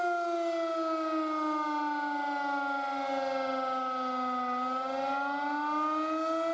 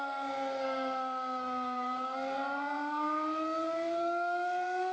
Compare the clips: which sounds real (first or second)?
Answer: first